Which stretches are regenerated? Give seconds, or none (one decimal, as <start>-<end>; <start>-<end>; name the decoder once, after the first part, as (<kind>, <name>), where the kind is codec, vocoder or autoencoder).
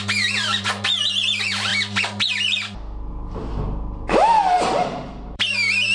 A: 0.0-5.9 (vocoder, BigVGAN v2)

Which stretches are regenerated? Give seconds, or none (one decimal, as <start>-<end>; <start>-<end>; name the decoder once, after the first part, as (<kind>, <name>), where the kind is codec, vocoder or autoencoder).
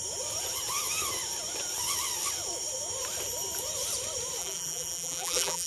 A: 4.4-5.7 (vocoder, BigVGAN v2)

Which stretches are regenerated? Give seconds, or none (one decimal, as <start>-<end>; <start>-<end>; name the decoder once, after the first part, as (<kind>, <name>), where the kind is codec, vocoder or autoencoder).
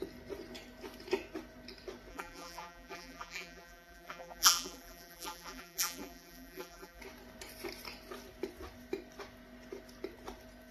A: 2.1-7.0 (vocoder, BigVGAN v2)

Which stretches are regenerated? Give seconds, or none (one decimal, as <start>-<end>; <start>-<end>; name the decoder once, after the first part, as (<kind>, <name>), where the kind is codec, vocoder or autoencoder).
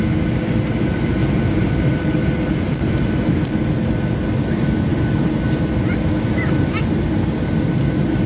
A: 1.2-1.7 (vocoder, BigVGAN v2)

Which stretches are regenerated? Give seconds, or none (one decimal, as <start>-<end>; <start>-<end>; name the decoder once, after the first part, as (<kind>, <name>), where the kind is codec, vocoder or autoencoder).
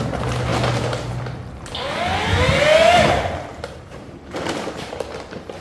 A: 0.5-1.2 (vocoder, BigVGAN v2); 3.5-5.6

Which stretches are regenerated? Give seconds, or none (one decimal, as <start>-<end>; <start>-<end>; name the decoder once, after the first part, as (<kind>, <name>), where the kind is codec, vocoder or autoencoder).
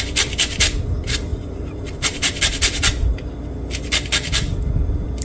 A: 1.3-2.4 (vocoder, BigVGAN v2)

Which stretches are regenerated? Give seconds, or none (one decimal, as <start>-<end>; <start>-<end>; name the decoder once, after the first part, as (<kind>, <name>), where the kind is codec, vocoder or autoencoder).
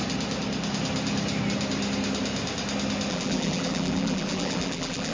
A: 3.1-5.1 (vocoder, BigVGAN v2)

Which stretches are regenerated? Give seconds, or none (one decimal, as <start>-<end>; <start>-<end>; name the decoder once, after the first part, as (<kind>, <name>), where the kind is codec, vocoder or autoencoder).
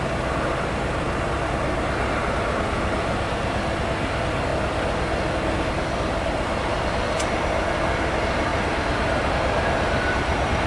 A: none